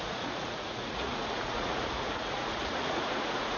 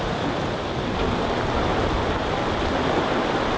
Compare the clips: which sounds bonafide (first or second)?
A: second